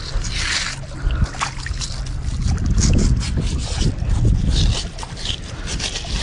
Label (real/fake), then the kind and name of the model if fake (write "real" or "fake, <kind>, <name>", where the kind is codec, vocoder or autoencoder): real